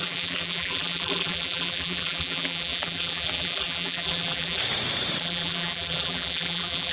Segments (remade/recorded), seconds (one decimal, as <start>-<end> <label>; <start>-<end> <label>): 0.0-4.6 remade; 4.6-5.2 recorded; 5.2-6.9 remade